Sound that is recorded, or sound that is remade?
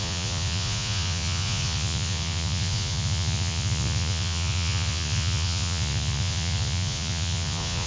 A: remade